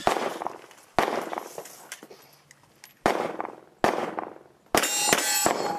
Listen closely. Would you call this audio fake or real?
real